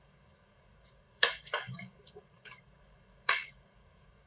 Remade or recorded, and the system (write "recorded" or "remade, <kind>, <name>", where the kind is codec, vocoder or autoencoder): remade, codec, DAC